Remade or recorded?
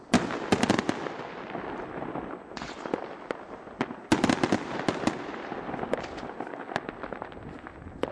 recorded